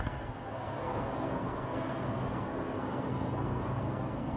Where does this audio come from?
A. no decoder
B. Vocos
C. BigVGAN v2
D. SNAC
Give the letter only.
D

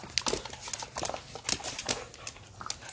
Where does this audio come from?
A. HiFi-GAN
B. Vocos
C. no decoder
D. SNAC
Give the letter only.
C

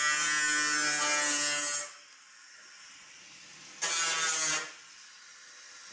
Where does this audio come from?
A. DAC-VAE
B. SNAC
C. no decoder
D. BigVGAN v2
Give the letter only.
C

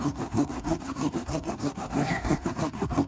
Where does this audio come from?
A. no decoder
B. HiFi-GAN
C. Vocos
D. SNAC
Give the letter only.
D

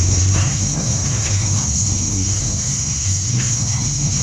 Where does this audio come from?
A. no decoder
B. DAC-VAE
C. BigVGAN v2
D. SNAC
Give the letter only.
D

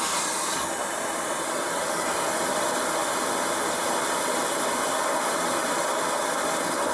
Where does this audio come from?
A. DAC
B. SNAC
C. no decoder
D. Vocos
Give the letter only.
C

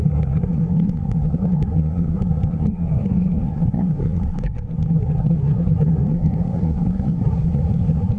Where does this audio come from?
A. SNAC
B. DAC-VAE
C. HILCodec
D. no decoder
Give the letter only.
A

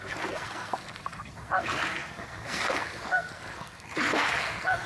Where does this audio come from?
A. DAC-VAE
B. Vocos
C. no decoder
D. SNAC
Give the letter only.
D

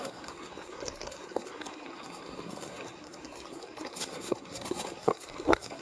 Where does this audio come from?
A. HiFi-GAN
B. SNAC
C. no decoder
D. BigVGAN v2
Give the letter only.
B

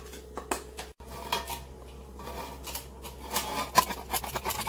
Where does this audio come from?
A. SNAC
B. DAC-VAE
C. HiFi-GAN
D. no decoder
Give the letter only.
D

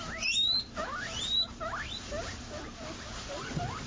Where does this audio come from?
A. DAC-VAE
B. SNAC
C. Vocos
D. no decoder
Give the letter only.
D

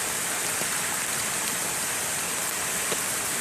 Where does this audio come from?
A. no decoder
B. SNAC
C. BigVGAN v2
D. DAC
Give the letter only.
A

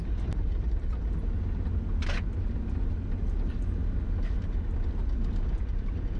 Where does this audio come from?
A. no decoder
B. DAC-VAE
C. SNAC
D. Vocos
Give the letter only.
A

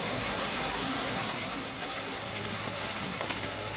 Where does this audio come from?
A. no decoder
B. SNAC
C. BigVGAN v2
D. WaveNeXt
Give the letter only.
B